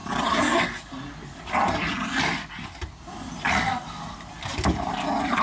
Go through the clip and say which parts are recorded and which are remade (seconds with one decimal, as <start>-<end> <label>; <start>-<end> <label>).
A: 0.0-5.4 recorded